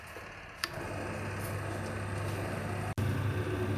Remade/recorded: recorded